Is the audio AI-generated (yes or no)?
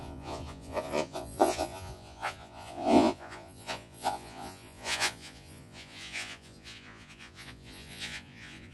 yes